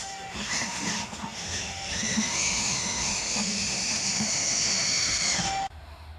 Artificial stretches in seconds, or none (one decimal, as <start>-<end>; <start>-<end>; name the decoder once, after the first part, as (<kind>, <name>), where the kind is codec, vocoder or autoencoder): 0.0-6.2 (autoencoder, DAC-VAE)